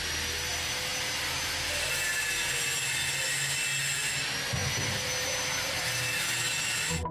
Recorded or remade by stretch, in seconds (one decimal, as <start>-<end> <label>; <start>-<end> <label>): 0.0-7.1 recorded